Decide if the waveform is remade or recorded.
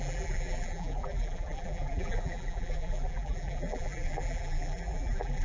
remade